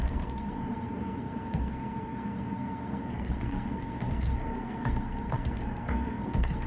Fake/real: fake